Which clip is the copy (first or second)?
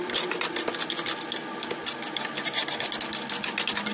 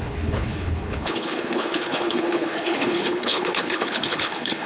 second